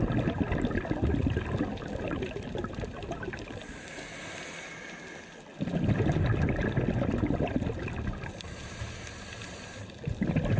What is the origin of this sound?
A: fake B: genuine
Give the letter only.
B